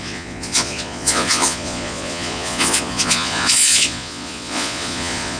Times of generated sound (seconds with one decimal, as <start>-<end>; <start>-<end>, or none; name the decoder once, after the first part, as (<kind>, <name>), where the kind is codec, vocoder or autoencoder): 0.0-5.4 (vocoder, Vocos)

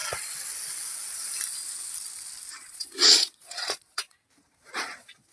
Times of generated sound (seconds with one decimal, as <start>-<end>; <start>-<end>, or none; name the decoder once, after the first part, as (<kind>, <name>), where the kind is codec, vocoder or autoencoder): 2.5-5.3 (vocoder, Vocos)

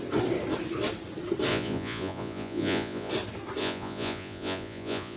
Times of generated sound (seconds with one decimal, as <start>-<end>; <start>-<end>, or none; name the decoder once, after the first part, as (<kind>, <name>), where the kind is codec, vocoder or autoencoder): 1.5-3.1 (vocoder, Vocos); 3.6-5.2

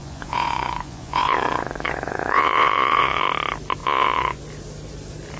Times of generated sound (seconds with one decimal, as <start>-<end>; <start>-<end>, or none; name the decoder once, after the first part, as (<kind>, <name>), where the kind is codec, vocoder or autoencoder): 0.0-3.2 (vocoder, Vocos); 3.8-4.4

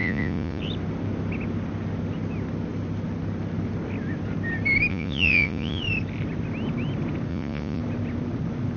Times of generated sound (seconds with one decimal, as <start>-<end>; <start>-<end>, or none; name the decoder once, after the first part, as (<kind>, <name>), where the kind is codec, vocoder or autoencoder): 0.0-0.6 (vocoder, Vocos); 4.9-5.8; 7.3-7.8

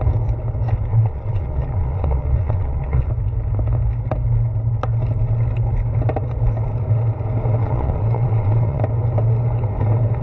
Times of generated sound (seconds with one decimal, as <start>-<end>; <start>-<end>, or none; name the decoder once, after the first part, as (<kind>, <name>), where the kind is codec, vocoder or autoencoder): 0.9-3.1 (vocoder, Vocos); 7.6-8.8

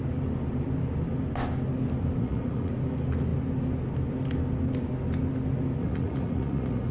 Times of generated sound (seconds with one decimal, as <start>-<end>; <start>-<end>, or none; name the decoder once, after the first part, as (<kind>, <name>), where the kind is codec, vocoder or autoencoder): 2.2-2.7 (vocoder, Vocos); 5.8-6.9

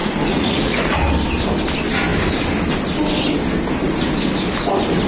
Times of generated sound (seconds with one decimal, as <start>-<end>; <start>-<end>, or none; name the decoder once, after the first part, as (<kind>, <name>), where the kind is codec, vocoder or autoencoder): 0.0-1.0 (vocoder, Vocos)